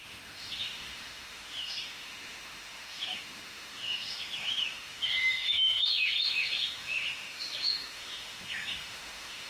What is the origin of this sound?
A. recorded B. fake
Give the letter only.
B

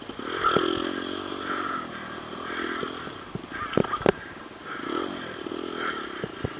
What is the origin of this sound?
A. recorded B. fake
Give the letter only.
A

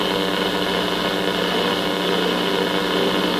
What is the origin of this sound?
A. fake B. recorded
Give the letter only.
B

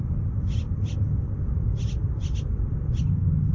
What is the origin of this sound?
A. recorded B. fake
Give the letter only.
A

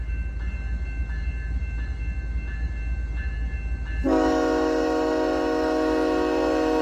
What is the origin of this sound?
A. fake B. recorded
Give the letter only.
B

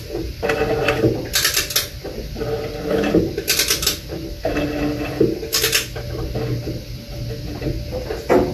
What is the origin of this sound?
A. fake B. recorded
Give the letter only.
B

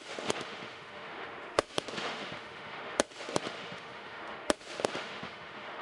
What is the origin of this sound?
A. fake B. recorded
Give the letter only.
A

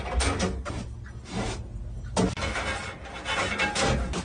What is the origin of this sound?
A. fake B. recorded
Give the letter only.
B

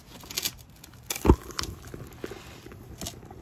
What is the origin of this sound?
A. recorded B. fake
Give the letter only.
A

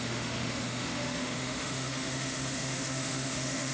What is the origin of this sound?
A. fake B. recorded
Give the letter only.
A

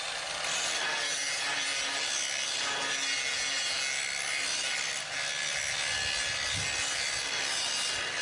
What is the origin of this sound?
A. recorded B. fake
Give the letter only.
A